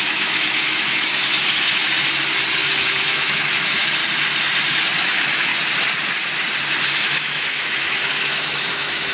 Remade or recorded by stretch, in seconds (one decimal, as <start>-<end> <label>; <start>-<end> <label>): 0.0-1.8 remade; 1.8-2.6 recorded; 2.6-4.0 remade; 4.0-5.0 recorded; 5.0-5.5 remade; 5.5-7.0 recorded; 7.0-9.1 remade